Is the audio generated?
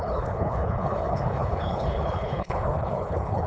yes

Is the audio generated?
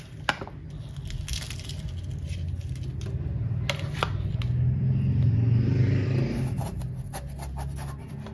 no